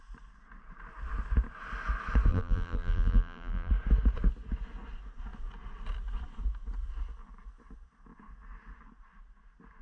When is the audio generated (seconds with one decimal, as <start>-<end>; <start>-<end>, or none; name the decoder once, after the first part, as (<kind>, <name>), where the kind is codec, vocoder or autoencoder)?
2.3-3.7 (vocoder, BigVGAN v2)

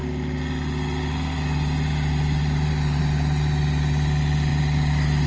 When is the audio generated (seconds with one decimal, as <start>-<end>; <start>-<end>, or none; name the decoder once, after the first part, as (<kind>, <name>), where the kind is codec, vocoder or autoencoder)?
none

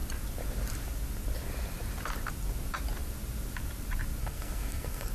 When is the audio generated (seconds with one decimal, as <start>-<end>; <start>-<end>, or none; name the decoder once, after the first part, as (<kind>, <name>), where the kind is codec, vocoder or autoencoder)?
4.2-5.1 (codec, SNAC)

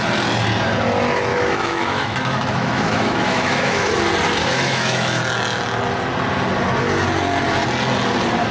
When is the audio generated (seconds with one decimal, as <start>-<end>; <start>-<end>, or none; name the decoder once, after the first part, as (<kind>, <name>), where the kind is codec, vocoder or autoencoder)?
1.3-3.9 (autoencoder, DAC-VAE); 4.4-5.2

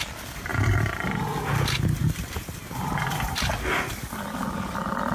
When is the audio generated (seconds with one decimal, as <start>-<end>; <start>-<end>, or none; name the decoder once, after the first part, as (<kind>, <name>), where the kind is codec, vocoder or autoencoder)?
none